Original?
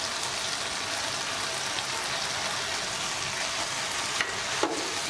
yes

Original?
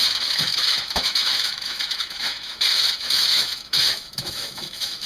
no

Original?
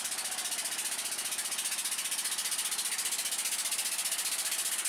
yes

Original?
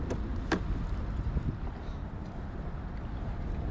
yes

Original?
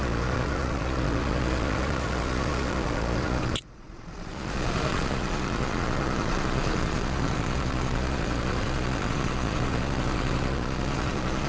no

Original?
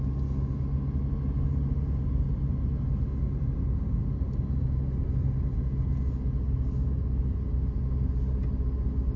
yes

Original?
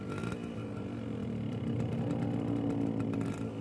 yes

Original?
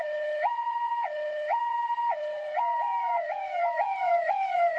no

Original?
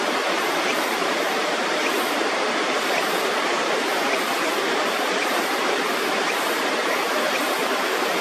no